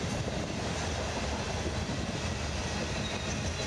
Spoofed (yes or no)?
no